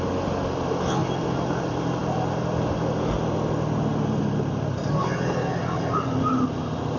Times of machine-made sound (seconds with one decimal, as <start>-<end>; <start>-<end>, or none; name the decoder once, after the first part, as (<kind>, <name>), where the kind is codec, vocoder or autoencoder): none